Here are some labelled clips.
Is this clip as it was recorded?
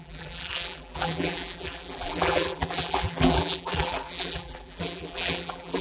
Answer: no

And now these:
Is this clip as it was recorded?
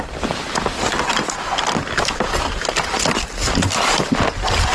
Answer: yes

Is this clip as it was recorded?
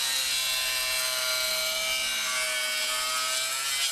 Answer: yes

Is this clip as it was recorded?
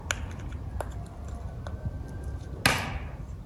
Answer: yes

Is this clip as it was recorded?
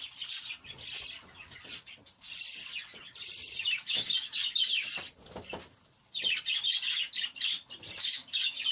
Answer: no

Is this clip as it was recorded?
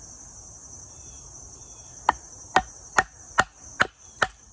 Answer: yes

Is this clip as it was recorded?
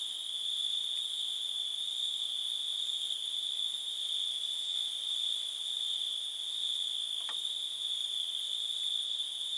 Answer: yes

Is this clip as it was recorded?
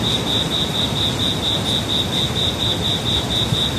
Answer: yes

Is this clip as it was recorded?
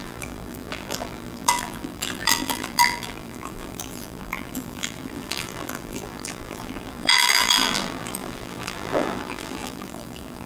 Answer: no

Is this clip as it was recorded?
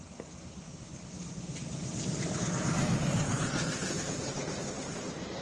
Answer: no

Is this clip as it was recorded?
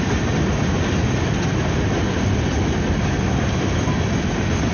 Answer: yes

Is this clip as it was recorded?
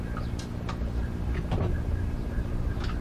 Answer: yes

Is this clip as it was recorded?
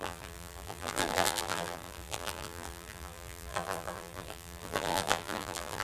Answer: no